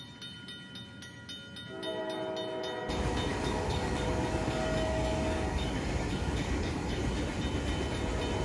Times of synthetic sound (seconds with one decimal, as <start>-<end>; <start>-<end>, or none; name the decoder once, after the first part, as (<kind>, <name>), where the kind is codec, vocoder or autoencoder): 3.3-7.2 (codec, DAC)